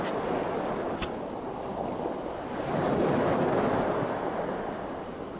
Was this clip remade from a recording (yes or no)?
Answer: no